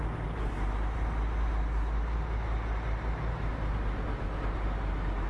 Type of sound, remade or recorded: recorded